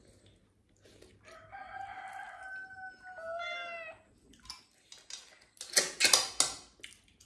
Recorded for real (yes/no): yes